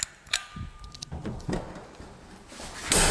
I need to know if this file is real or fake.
real